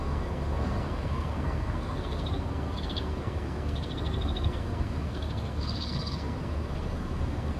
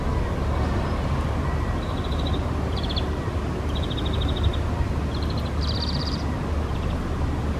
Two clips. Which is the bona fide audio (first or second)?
second